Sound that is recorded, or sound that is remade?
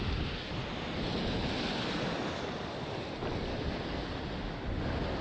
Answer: recorded